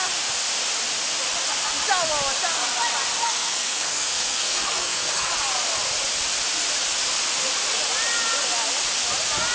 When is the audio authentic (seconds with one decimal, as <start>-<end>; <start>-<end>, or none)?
0.0-3.2; 5.3-9.5